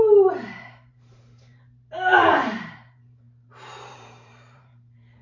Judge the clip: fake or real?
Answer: fake